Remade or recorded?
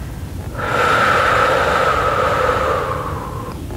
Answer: recorded